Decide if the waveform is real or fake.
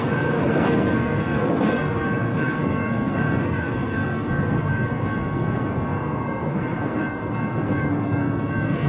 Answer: fake